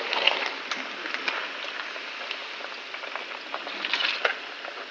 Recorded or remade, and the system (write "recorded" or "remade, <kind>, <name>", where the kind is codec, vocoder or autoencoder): recorded